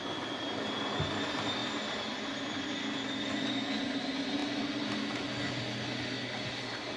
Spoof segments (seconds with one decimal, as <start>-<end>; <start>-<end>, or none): none

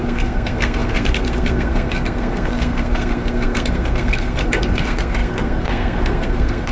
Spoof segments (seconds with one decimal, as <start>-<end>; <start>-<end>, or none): 0.0-6.7

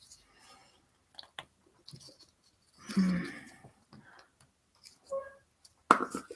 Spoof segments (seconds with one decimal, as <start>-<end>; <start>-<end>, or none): none

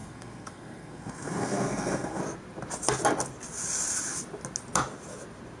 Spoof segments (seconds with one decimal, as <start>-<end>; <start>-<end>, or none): 0.0-2.2

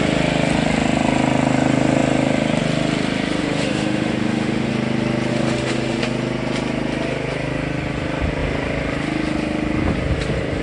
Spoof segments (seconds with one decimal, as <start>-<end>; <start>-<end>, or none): 3.4-4.7; 5.3-6.0

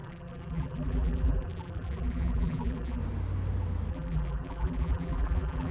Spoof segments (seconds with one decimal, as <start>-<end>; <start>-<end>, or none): 0.0-3.0; 3.9-5.7